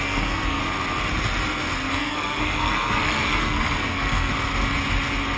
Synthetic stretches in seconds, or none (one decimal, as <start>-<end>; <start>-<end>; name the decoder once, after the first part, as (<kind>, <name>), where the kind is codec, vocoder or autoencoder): 0.0-0.6 (codec, SNAC); 1.9-4.3